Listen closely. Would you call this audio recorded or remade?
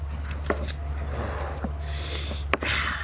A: recorded